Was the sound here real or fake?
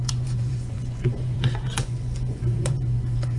fake